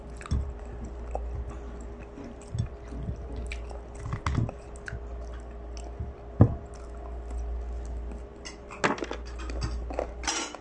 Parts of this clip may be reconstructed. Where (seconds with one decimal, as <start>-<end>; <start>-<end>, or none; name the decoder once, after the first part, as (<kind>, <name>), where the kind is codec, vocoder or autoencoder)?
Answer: none